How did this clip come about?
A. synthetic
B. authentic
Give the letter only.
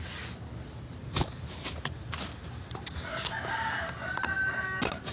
B